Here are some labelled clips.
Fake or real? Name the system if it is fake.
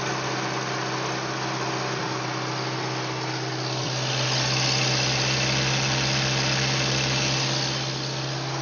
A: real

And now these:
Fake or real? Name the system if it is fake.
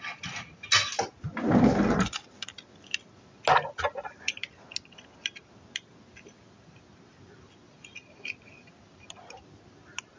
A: real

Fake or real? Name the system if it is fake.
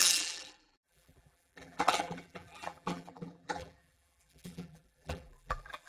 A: fake, vocoder, BigVGAN v2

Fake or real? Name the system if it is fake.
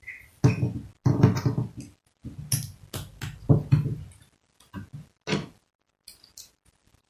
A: real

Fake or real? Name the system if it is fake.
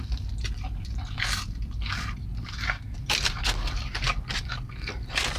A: real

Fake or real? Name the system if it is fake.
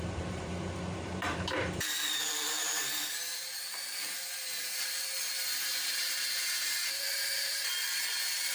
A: fake, vocoder, BigVGAN v2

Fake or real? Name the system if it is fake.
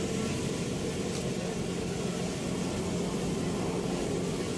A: real